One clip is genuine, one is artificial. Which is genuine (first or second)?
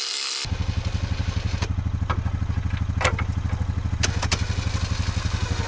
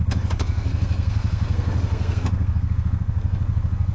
first